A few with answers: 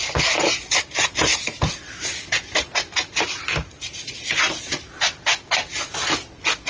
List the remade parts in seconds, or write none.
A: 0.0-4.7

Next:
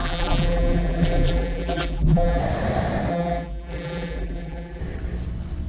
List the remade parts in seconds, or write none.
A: 0.0-2.4; 3.1-4.8

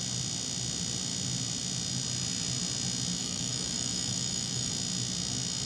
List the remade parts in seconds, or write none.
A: 3.2-4.7

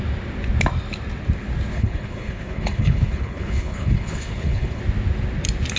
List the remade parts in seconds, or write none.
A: 1.7-4.8